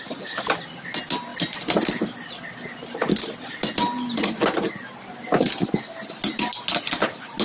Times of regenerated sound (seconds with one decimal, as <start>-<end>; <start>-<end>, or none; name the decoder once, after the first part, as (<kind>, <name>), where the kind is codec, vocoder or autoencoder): none